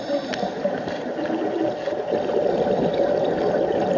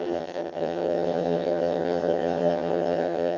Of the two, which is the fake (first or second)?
second